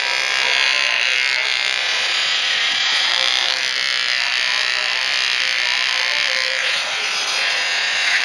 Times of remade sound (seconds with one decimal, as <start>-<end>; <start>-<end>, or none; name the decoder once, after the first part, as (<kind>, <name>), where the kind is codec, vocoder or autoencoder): 1.8-3.1 (vocoder, Vocos); 6.6-8.2